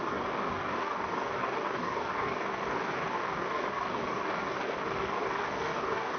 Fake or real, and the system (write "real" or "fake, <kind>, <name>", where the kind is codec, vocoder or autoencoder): fake, codec, DAC